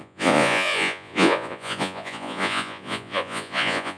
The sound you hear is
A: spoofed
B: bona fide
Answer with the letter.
A